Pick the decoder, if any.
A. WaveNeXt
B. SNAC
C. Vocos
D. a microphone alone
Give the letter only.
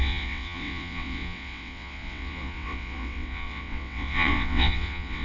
A